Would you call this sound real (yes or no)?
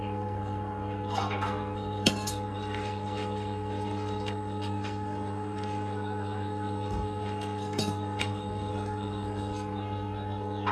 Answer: no